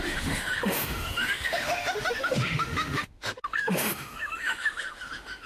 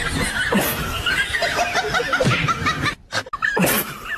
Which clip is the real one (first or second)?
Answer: second